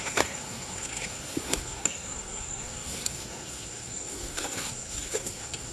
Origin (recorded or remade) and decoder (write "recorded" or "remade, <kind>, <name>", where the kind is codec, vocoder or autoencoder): remade, codec, SNAC